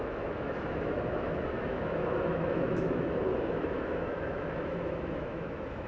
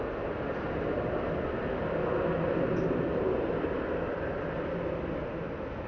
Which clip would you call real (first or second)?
second